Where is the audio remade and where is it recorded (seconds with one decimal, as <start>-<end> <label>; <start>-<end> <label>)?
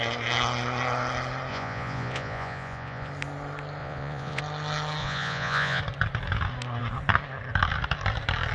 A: 0.0-1.5 recorded; 1.5-3.1 remade; 3.1-3.8 recorded; 3.8-4.4 remade; 4.4-5.0 recorded; 5.0-5.8 remade; 5.8-8.5 recorded